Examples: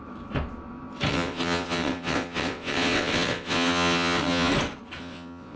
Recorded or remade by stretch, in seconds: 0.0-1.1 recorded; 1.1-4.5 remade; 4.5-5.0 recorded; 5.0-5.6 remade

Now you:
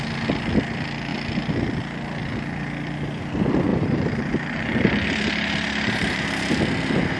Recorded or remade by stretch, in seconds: 0.0-3.7 recorded; 3.7-6.6 remade; 6.6-7.2 recorded